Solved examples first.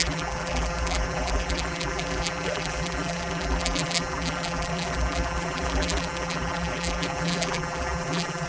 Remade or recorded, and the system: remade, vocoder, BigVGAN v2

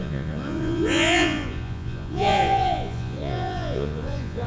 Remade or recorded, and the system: remade, vocoder, Vocos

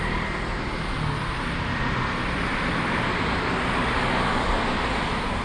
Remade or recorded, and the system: recorded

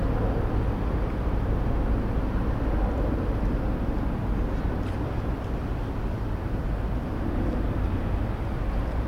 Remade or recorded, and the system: recorded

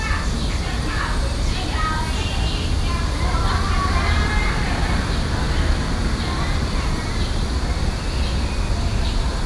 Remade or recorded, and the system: recorded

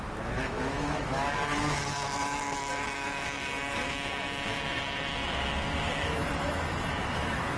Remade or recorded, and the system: remade, autoencoder, DAC-VAE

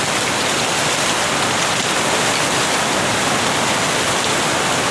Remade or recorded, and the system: recorded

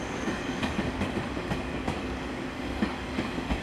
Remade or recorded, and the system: remade, codec, DAC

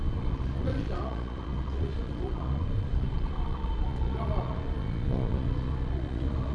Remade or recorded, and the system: remade, vocoder, Vocos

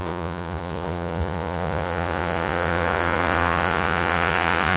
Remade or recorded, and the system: remade, vocoder, Vocos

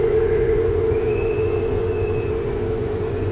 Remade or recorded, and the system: remade, vocoder, Vocos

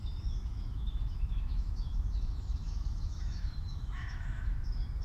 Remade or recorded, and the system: remade, autoencoder, DAC-VAE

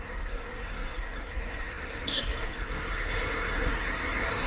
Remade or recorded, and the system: remade, codec, SNAC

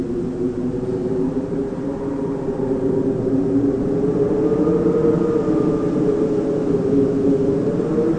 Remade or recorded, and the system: recorded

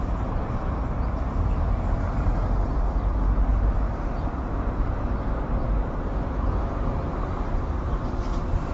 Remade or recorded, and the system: remade, vocoder, BigVGAN v2